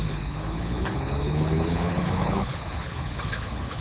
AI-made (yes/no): yes